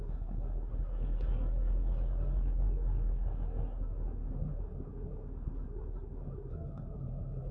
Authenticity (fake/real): fake